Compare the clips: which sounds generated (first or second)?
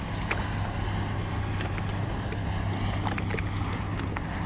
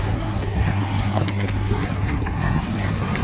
second